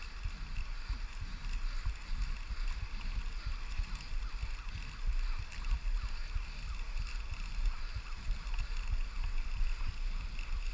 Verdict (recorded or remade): recorded